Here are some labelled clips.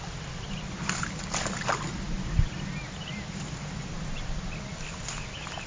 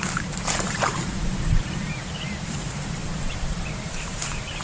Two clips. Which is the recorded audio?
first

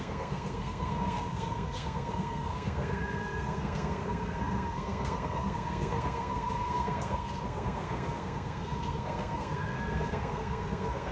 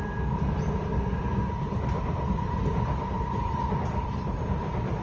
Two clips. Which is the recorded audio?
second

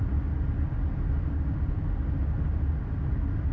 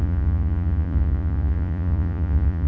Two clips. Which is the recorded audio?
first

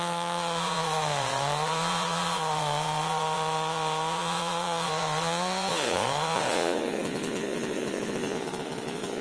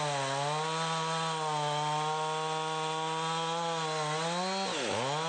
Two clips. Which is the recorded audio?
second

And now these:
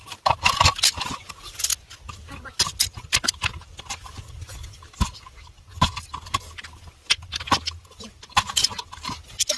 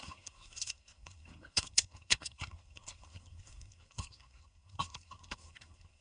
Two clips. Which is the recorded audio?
first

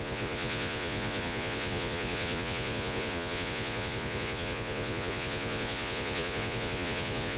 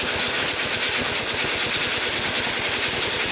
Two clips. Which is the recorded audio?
second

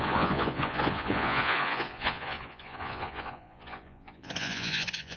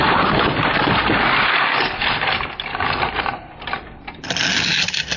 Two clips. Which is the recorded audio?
second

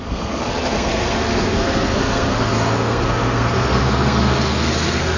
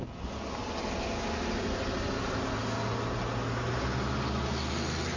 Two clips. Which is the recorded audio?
second